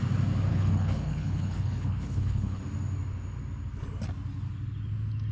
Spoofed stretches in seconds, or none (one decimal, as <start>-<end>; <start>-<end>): 0.5-2.6